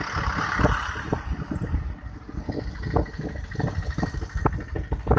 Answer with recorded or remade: recorded